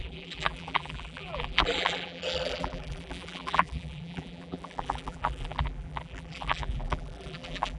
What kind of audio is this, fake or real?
fake